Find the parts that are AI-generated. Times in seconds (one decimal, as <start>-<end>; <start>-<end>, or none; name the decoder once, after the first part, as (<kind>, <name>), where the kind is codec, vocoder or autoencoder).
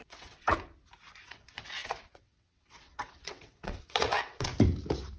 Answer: 0.0-0.5 (vocoder, WaveNeXt); 1.2-4.5